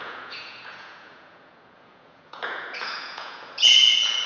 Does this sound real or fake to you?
fake